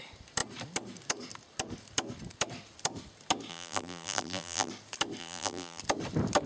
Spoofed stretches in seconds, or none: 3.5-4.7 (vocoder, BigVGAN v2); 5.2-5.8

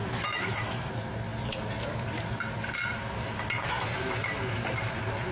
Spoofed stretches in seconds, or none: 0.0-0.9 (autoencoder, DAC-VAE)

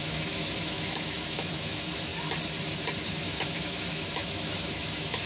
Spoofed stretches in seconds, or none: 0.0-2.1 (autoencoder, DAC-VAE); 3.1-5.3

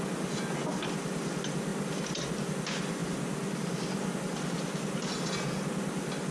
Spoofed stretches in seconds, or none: none

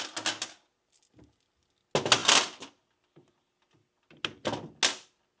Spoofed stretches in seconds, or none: none

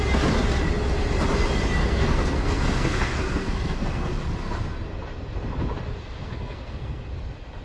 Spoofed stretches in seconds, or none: 1.8-4.1 (codec, SNAC); 6.0-7.0

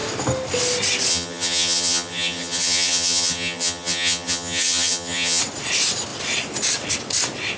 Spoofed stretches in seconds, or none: 1.1-5.4 (vocoder, HiFi-GAN)